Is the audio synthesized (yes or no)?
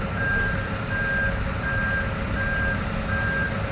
no